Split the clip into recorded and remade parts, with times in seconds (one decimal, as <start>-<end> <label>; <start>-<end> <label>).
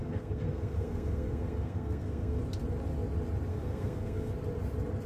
0.0-2.4 remade; 2.4-3.5 recorded; 3.5-4.3 remade; 4.3-5.1 recorded